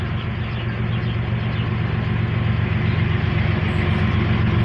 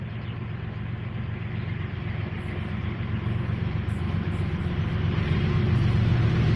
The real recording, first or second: first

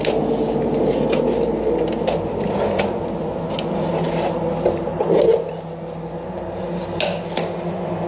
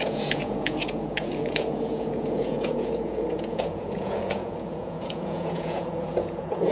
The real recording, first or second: first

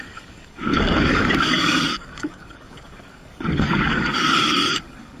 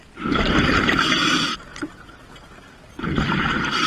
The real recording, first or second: second